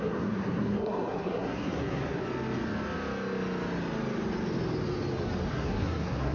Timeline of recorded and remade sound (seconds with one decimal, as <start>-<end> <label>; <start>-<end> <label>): 0.0-2.2 remade; 2.2-5.5 recorded; 5.5-6.3 remade